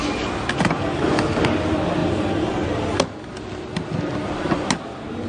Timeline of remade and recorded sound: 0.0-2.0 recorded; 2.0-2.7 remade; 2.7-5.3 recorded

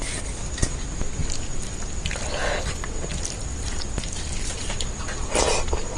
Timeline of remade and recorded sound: 0.0-6.0 recorded

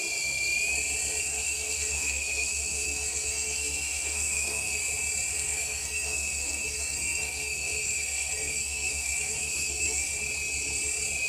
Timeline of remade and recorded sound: 0.0-1.2 recorded; 1.2-4.8 remade; 4.8-5.3 recorded; 5.3-10.1 remade; 10.1-11.3 recorded

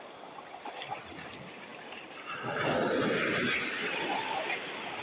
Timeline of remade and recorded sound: 0.0-5.0 recorded

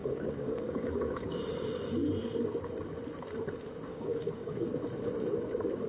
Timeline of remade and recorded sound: 0.0-1.4 remade; 1.4-3.9 recorded; 3.9-4.7 remade; 4.7-5.9 recorded

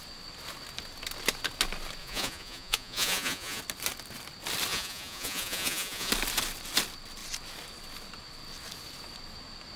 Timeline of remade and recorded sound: 0.0-2.0 recorded; 2.0-3.6 remade; 3.6-4.7 recorded; 4.7-6.1 remade; 6.1-9.8 recorded

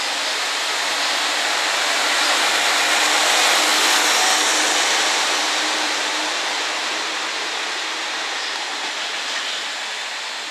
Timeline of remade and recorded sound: 0.0-5.4 recorded; 5.4-6.1 remade; 6.1-10.5 recorded